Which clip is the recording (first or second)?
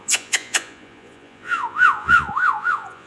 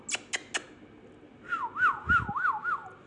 second